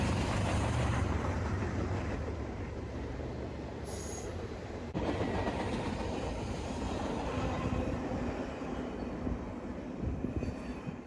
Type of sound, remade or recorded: remade